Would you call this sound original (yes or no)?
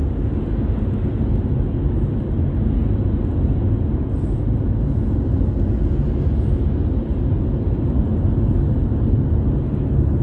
yes